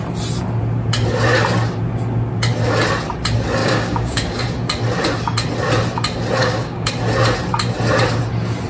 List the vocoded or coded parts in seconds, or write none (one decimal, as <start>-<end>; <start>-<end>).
3.6-4.4; 6.4-6.9